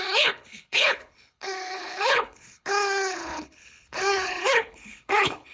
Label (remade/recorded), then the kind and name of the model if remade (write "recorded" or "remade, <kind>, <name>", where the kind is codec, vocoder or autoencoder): remade, codec, HILCodec